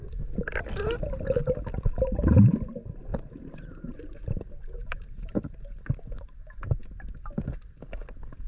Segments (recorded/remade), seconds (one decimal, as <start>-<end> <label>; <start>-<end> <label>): 0.0-3.1 recorded; 3.1-5.4 remade; 5.4-8.5 recorded